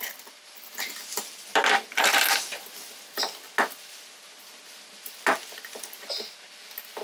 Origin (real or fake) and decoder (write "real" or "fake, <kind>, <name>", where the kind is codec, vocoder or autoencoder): real